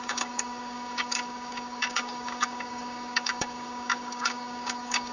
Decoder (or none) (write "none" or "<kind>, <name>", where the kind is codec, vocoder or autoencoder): codec, DAC